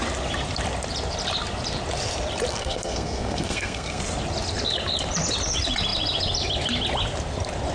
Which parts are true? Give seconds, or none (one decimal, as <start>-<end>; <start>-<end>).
0.0-2.5; 4.0-7.7